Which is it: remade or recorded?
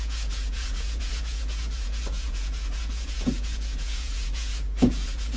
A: remade